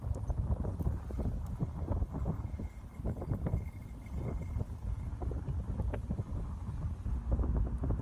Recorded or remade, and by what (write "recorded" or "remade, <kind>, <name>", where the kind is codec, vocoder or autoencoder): recorded